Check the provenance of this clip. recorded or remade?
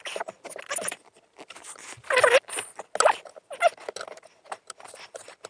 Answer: recorded